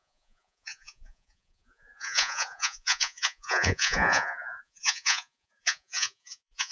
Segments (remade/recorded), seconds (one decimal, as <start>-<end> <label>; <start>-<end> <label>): 0.0-6.7 remade